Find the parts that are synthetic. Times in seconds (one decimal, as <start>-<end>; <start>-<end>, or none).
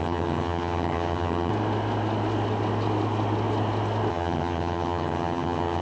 0.0-1.5; 4.1-5.8